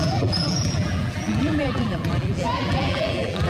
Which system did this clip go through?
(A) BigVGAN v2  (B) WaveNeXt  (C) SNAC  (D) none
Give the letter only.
A